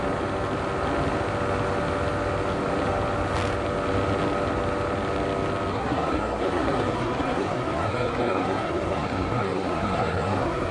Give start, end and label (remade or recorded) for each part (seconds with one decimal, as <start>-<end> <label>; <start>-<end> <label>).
0.0-5.7 recorded; 5.7-10.7 remade

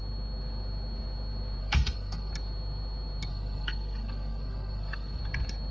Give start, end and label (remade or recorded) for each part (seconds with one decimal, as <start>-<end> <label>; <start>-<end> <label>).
0.0-1.6 recorded; 1.6-2.3 remade; 2.3-3.3 recorded; 3.3-5.2 remade; 5.2-5.7 recorded